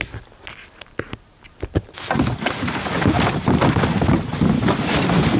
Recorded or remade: recorded